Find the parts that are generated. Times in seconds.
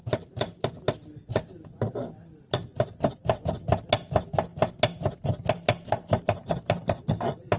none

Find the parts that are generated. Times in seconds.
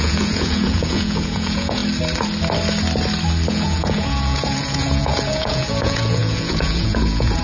0.0-1.8 (vocoder, Vocos); 3.5-7.4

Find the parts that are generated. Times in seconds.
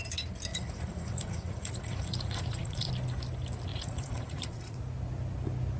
0.5-2.9 (vocoder, Vocos); 3.7-4.8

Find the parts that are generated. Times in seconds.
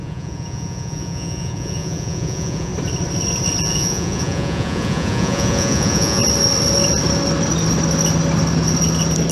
0.0-2.7 (vocoder, Vocos); 3.6-6.2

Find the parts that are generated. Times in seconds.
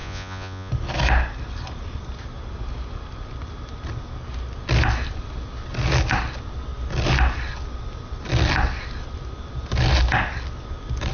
0.0-0.7 (vocoder, Vocos)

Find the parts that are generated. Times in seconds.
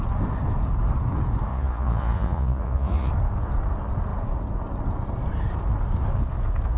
1.5-3.1 (vocoder, Vocos)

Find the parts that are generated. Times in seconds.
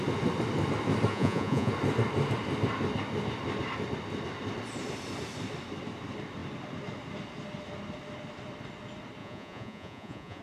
1.1-1.7 (vocoder, Vocos); 9.2-10.4